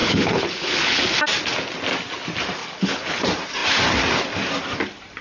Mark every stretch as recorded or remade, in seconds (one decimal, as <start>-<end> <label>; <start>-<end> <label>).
0.0-1.0 remade; 1.0-2.6 recorded; 2.6-3.2 remade; 3.2-5.2 recorded